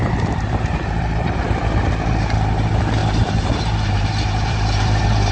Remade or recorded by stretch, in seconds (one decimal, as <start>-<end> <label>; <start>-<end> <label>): 0.0-1.6 remade; 1.6-3.0 recorded; 3.0-5.3 remade

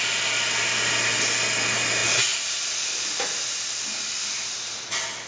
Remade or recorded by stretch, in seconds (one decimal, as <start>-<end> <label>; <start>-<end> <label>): 0.0-5.3 recorded

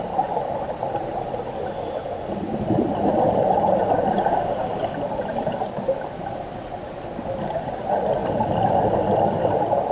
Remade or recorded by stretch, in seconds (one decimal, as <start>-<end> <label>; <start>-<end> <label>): 0.0-3.8 recorded; 3.8-5.0 remade; 5.0-8.2 recorded; 8.2-9.9 remade

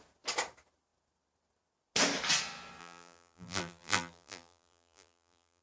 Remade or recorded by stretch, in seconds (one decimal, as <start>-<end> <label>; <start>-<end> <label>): 0.0-2.8 recorded; 2.8-5.6 remade

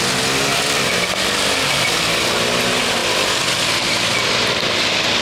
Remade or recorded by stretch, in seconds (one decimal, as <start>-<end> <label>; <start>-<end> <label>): 0.0-0.5 recorded; 0.5-2.3 remade; 2.3-5.2 recorded

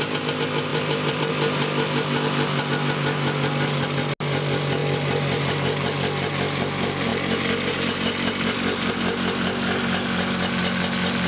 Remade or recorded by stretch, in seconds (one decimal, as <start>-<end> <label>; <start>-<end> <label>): 0.0-0.7 recorded; 0.7-1.3 remade; 1.3-7.1 recorded; 7.1-8.9 remade; 8.9-11.3 recorded

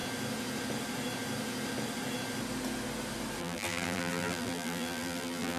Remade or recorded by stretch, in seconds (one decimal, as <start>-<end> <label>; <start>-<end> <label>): 0.0-3.4 recorded; 3.4-5.6 remade